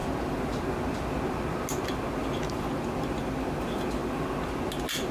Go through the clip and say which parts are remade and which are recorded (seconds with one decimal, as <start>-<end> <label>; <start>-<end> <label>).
0.0-5.1 recorded